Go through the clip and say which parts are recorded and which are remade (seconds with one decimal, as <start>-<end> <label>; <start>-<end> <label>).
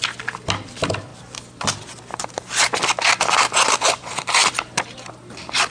0.0-5.7 recorded